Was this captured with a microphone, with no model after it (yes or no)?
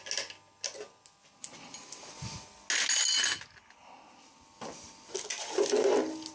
yes